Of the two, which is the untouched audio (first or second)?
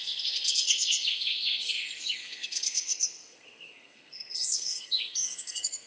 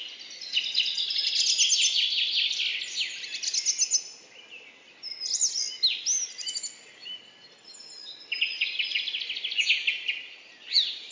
second